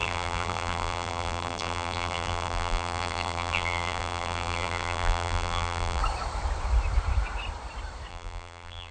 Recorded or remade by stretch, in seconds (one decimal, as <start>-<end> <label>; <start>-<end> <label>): 0.0-6.0 remade; 6.0-8.1 recorded; 8.1-8.9 remade